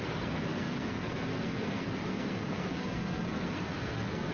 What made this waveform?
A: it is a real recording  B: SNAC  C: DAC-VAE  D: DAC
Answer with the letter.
B